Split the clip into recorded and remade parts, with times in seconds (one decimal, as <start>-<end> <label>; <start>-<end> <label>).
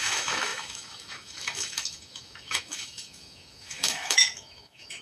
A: 0.0-5.0 remade